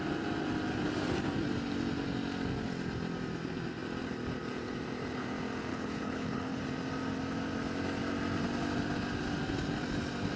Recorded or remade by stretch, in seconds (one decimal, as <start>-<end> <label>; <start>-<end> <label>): 0.0-5.7 recorded; 5.7-6.6 remade; 6.6-10.4 recorded